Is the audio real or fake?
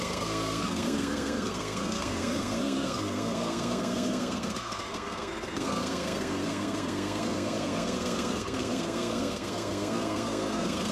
fake